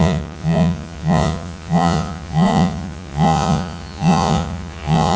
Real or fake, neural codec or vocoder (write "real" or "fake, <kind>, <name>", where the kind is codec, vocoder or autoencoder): fake, vocoder, Vocos